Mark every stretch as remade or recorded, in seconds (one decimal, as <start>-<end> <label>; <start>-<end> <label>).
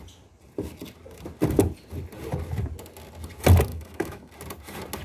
0.0-3.7 recorded; 3.7-4.3 remade; 4.3-5.0 recorded